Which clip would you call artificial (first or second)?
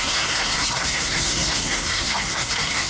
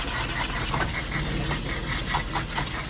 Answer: first